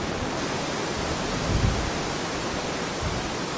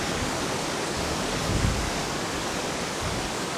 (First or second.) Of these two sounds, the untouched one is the first